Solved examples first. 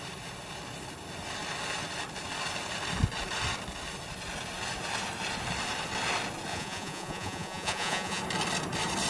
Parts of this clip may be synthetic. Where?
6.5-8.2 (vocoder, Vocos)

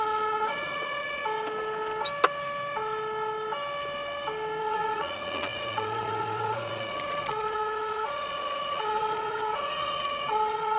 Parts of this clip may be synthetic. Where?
0.0-1.2 (vocoder, Vocos); 4.6-10.8

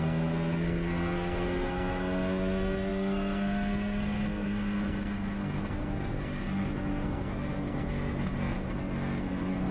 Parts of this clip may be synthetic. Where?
0.0-9.7 (codec, SNAC)

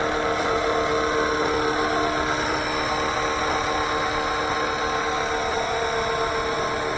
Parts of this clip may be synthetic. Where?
none